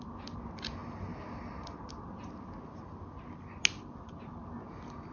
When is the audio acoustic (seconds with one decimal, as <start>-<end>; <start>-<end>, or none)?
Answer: 0.0-5.1